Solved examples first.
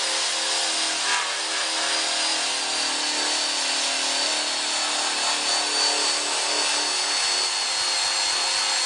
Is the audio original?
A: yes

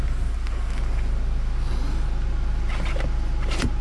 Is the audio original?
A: yes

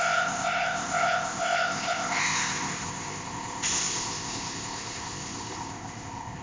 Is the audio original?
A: no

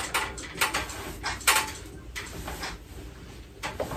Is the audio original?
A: yes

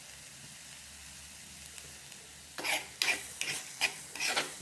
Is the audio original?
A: yes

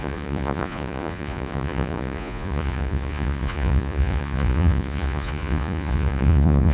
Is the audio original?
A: no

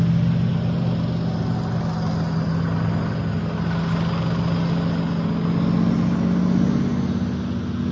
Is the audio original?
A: yes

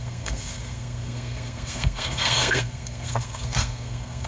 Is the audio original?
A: no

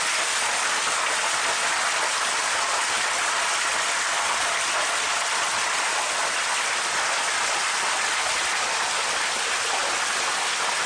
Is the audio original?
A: yes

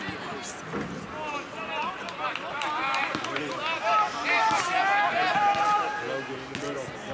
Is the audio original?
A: yes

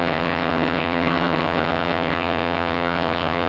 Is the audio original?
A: no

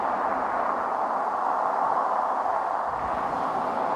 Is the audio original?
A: yes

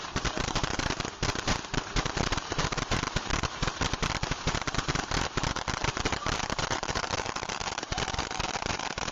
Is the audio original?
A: no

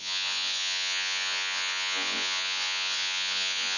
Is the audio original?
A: no